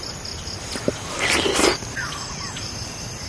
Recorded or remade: recorded